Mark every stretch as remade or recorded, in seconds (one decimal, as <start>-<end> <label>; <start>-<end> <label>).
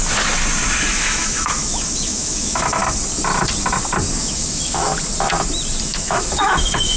0.0-0.9 recorded; 0.9-2.8 remade; 2.8-4.2 recorded; 4.2-4.9 remade; 4.9-5.8 recorded; 5.8-7.0 remade